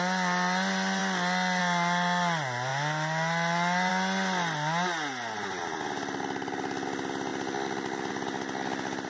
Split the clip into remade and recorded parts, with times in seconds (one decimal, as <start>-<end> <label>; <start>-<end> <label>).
0.0-9.1 recorded